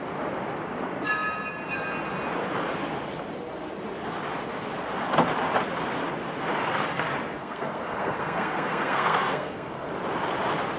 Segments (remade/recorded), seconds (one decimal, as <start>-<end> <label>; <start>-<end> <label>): 0.0-7.4 recorded; 7.4-9.9 remade; 9.9-10.8 recorded